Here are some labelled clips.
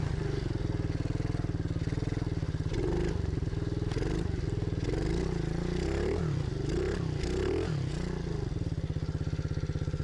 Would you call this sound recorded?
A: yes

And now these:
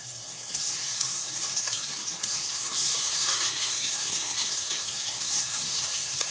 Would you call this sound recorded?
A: no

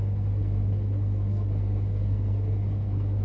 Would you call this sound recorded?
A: no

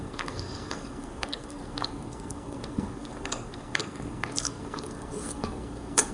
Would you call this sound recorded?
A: no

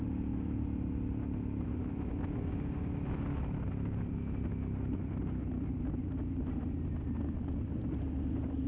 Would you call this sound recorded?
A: yes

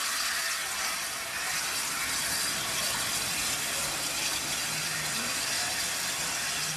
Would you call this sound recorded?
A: yes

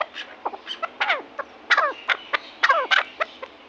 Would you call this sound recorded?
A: yes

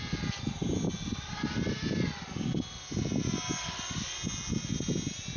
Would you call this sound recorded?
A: yes